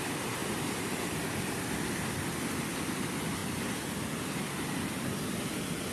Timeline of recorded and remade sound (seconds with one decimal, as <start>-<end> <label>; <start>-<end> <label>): 0.0-0.4 recorded; 0.4-1.1 remade; 1.1-3.4 recorded; 3.4-4.9 remade; 4.9-5.9 recorded